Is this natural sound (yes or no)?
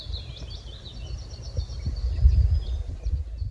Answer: yes